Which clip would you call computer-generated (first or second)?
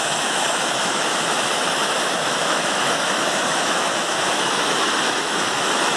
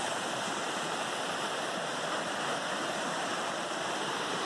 first